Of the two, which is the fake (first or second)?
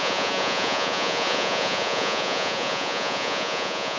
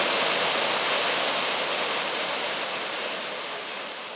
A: first